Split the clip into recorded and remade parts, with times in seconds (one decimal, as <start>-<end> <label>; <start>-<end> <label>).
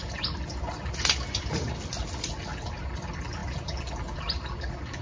0.0-5.0 recorded